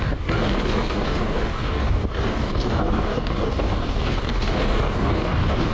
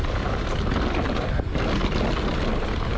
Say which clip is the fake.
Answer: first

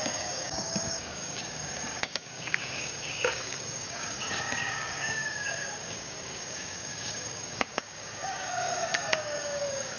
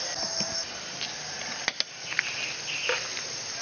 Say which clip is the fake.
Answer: first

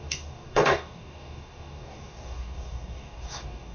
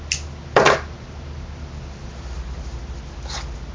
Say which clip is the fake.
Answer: first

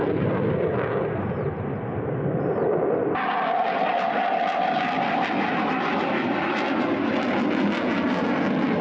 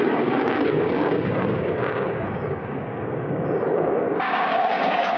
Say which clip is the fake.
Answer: second